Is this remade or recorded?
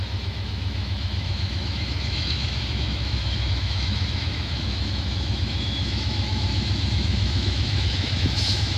remade